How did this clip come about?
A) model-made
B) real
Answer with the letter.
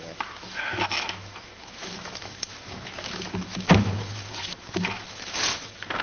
A